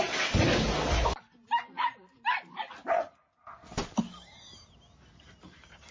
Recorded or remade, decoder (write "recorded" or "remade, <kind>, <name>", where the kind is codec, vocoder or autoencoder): recorded